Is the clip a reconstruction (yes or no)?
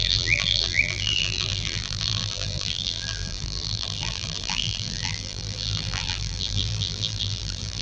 yes